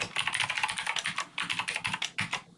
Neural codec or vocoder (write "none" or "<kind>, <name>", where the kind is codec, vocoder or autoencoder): none